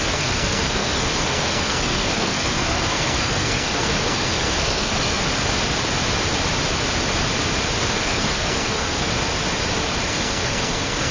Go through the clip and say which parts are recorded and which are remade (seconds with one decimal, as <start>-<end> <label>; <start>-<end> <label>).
0.0-5.2 remade; 5.2-7.8 recorded; 7.8-9.1 remade; 9.1-10.1 recorded; 10.1-11.1 remade